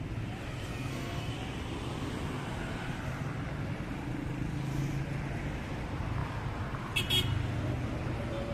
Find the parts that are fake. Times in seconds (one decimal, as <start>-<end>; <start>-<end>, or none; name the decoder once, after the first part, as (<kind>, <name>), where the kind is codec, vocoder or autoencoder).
0.7-1.3 (codec, SNAC)